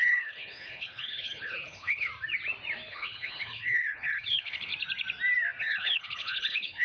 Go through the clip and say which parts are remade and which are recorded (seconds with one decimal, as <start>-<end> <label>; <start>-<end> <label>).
0.0-2.1 remade; 2.1-2.9 recorded; 2.9-4.7 remade; 4.7-5.6 recorded; 5.6-6.8 remade